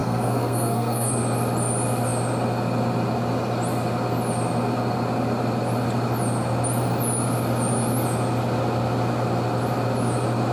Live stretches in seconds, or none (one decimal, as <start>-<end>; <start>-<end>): 1.1-10.5

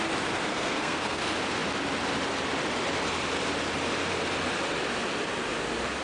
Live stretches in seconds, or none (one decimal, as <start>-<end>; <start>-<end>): 0.0-0.5; 1.2-6.0

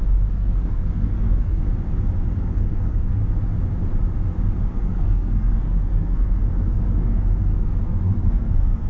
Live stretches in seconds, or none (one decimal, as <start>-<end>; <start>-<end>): 1.6-2.4; 3.2-4.7

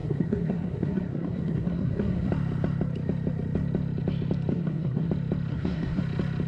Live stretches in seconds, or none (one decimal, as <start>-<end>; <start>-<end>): 2.3-4.5; 5.1-5.5; 6.0-6.5

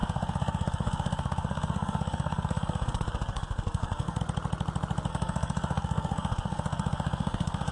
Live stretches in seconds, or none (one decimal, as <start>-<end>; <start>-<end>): 4.2-5.1

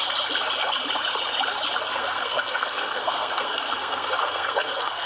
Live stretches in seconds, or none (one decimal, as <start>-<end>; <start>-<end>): 0.0-1.9